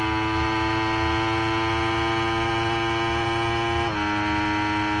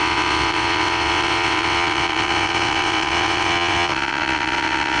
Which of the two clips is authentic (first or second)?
first